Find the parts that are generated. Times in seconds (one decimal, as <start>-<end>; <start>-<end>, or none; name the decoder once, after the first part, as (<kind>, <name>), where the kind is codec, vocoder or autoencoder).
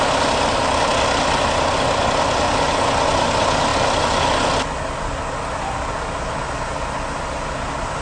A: none